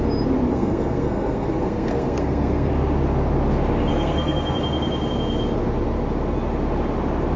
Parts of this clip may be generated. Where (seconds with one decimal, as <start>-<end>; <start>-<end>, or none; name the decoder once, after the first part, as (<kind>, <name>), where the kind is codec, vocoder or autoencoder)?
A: 0.5-2.7 (codec, SNAC); 3.9-4.6